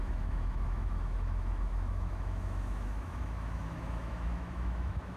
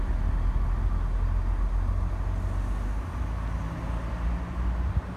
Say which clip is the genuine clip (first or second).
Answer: second